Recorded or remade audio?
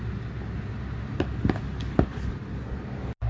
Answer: recorded